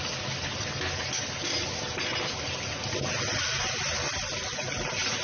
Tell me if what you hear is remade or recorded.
recorded